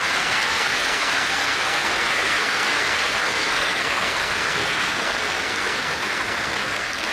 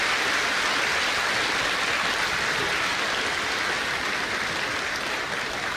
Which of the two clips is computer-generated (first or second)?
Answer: first